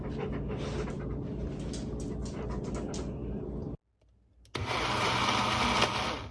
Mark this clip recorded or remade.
recorded